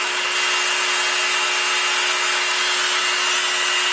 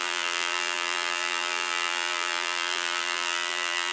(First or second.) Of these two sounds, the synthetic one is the second